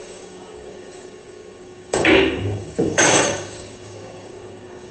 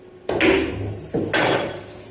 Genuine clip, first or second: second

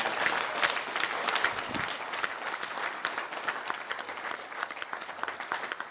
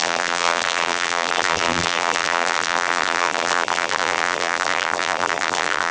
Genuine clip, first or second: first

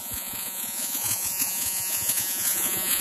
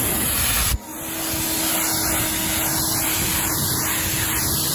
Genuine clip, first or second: second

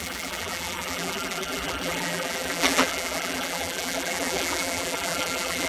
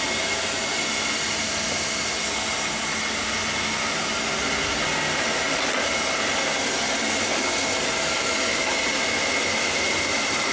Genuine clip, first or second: second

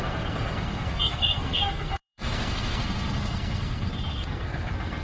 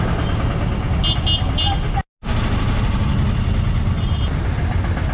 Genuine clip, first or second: second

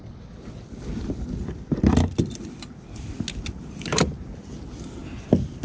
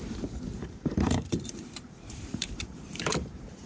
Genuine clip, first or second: first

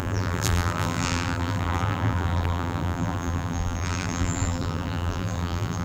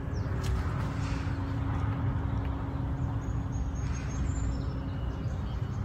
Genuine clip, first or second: second